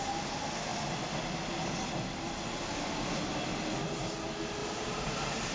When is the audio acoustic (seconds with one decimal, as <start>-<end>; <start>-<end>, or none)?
0.0-4.6; 5.1-5.5